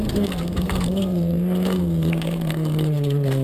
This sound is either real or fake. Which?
fake